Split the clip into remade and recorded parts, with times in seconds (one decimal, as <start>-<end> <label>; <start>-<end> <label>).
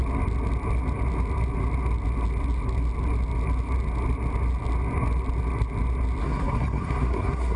0.0-6.2 recorded; 6.2-7.6 remade